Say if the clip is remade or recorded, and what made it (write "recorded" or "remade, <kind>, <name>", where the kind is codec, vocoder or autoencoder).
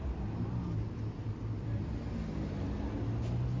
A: recorded